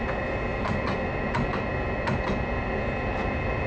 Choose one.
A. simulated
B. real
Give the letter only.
B